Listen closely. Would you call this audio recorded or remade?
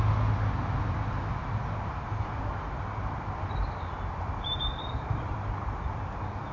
recorded